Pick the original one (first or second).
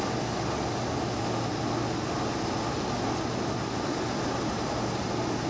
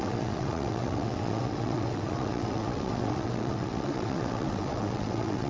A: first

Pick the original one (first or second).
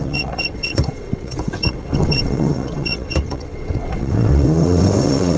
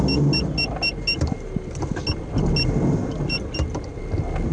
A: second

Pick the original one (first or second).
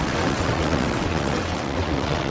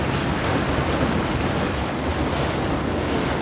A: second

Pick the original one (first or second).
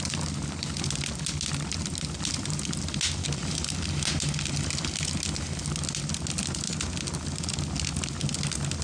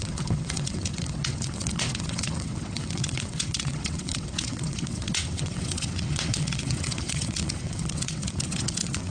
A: first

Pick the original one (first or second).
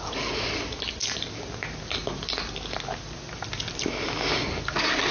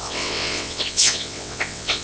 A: first